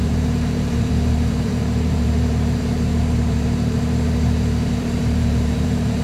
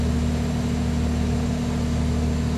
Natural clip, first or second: second